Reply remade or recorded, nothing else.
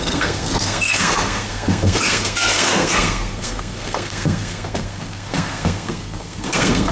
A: remade